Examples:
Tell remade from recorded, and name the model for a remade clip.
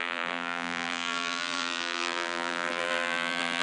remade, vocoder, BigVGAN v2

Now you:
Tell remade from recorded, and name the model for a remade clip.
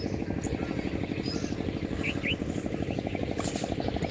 recorded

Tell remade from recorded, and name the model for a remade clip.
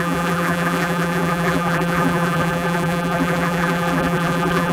remade, vocoder, BigVGAN v2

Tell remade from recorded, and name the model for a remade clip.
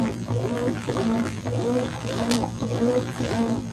remade, vocoder, BigVGAN v2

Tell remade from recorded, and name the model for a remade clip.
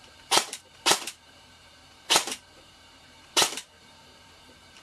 remade, vocoder, BigVGAN v2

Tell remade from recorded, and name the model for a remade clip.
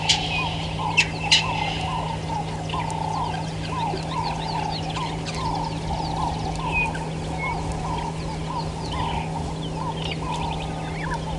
recorded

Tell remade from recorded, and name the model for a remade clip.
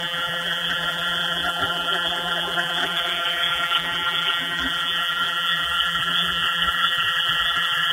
remade, vocoder, BigVGAN v2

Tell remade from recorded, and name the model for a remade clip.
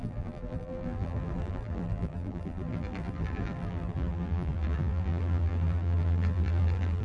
remade, vocoder, BigVGAN v2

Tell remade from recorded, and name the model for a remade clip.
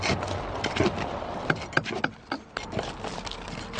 recorded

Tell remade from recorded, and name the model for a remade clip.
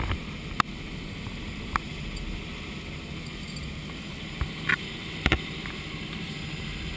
recorded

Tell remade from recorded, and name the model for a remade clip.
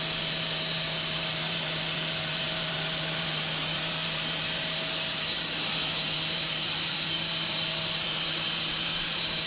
remade, vocoder, BigVGAN v2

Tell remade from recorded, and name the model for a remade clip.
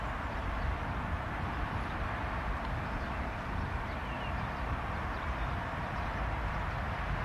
remade, vocoder, BigVGAN v2